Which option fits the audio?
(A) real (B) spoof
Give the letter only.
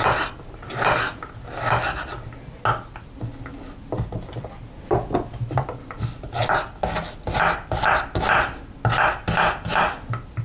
A